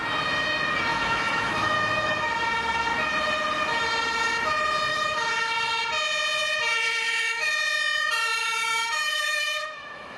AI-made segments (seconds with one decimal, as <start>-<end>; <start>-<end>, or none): 0.9-2.3; 4.9-5.5; 6.7-7.5; 8.4-10.2